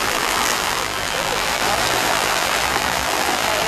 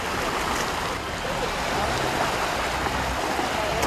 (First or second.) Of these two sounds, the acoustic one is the second